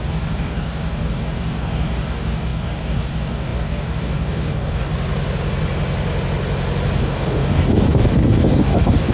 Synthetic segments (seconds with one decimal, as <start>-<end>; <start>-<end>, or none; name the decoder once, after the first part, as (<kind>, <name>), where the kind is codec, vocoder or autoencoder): 0.0-4.9 (codec, DAC); 7.0-9.1